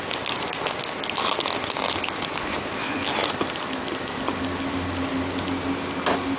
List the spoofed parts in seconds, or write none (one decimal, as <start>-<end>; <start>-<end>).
none